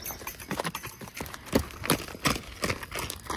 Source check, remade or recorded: recorded